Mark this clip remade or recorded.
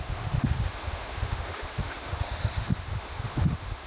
remade